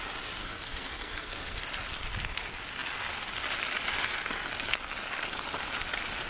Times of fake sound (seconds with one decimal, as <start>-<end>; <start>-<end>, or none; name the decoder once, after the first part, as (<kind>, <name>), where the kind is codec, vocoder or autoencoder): 0.4-1.6 (codec, SNAC)